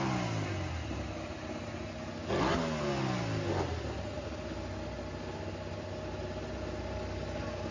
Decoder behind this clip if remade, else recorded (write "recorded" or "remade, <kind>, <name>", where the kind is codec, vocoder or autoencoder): recorded